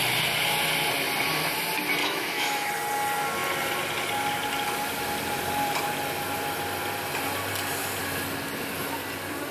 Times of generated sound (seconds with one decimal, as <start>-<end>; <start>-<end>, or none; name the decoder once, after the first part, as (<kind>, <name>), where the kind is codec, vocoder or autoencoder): 2.0-2.7 (autoencoder, DAC-VAE)